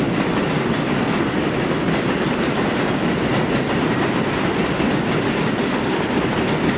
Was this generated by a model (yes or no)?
no